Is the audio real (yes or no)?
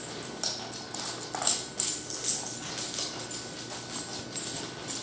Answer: yes